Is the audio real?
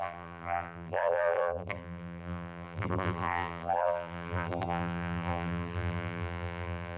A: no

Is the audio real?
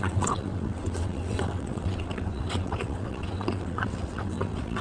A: no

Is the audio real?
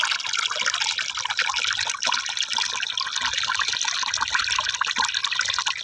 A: yes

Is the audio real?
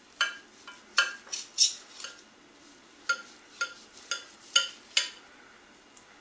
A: yes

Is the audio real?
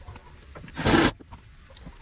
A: yes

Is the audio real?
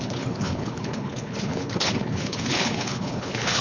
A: no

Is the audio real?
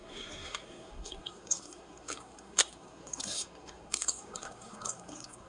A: no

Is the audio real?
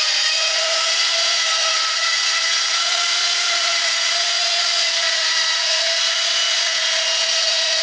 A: no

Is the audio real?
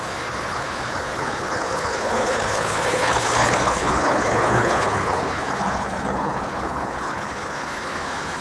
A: no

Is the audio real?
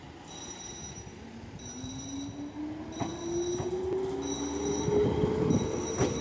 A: yes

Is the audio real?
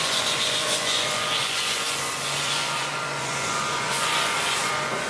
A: no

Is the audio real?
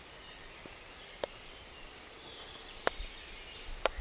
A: yes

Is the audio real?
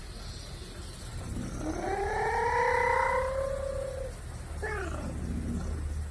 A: yes